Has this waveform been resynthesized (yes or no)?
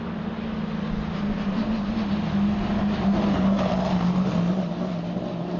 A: no